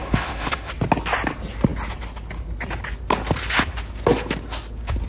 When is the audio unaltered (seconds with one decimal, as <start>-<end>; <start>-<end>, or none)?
0.7-5.1